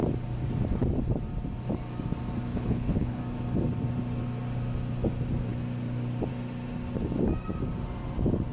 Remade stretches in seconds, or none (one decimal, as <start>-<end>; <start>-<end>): 2.5-3.2